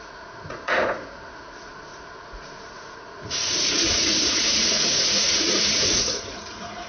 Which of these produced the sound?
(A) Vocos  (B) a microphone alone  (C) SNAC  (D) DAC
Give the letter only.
A